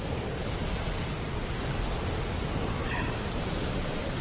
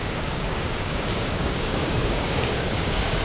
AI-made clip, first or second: second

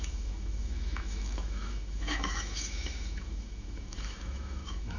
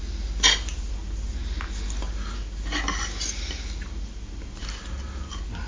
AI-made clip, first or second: first